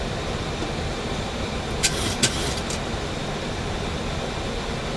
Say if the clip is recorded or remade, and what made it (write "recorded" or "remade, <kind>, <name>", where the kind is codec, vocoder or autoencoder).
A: recorded